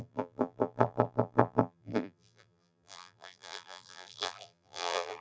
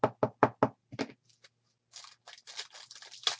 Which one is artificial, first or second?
first